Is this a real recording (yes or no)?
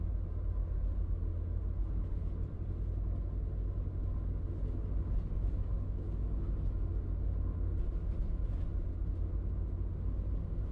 yes